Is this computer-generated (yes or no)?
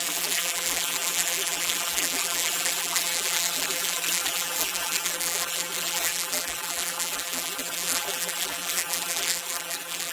yes